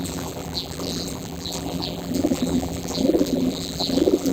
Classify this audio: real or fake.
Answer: fake